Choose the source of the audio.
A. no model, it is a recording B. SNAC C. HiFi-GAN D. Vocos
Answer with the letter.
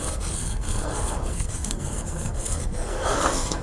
B